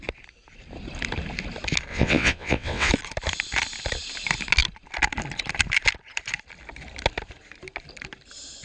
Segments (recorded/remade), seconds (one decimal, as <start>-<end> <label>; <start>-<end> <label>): 0.0-1.9 recorded; 1.9-2.9 remade; 2.9-8.6 recorded

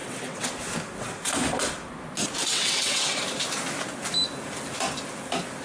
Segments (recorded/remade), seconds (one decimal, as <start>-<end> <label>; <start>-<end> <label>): 0.0-0.5 remade; 0.5-2.4 recorded; 2.4-3.2 remade; 3.2-5.6 recorded